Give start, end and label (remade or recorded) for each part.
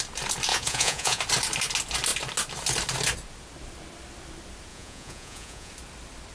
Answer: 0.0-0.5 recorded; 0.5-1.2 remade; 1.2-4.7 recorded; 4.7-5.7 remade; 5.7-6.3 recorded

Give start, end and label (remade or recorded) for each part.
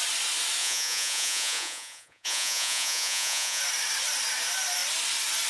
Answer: 0.0-0.6 recorded; 0.6-3.6 remade; 3.6-5.5 recorded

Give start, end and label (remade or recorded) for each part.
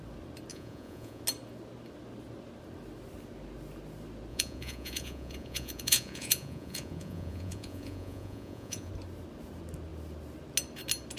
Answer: 0.0-0.5 recorded; 0.5-1.2 remade; 1.2-4.3 recorded; 4.3-8.9 remade; 8.9-11.2 recorded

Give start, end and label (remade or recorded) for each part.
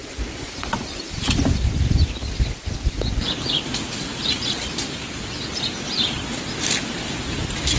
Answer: 0.0-1.0 remade; 1.0-7.8 recorded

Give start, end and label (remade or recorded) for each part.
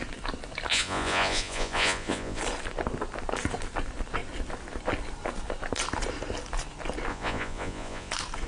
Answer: 0.0-0.7 recorded; 0.7-2.4 remade; 2.4-7.1 recorded; 7.1-8.1 remade; 8.1-8.5 recorded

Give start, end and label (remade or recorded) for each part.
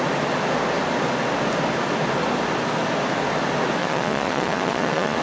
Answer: 0.0-3.8 recorded; 3.8-5.2 remade